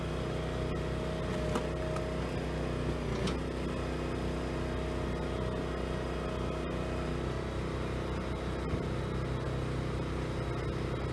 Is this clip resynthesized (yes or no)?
no